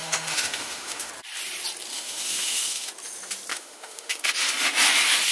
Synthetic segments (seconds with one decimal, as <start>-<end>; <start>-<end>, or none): 0.0-1.1; 1.9-2.9; 3.5-4.3